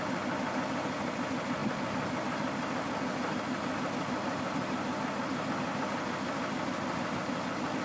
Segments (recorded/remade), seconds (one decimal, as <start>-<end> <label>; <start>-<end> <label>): 0.0-7.8 recorded